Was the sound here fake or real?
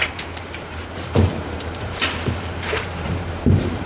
fake